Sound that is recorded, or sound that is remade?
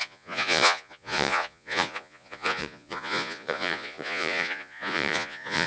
remade